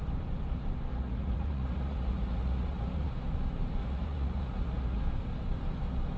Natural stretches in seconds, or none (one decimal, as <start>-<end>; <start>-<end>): 0.0-0.9; 3.1-3.8; 5.0-6.2